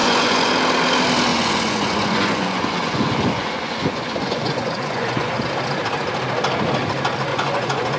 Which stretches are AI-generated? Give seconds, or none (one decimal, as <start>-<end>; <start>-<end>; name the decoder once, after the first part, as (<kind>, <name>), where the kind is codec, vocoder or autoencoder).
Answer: 0.0-0.5 (vocoder, Vocos); 1.3-5.4; 7.3-8.0